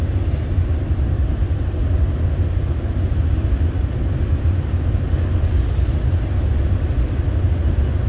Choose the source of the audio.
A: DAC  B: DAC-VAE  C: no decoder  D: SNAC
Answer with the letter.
C